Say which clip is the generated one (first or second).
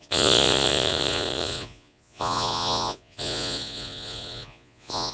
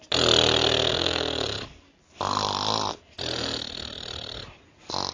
first